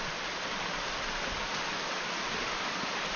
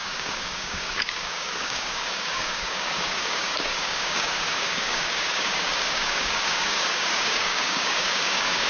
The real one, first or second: first